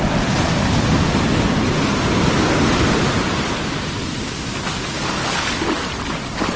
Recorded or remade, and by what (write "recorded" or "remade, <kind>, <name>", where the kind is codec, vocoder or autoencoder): recorded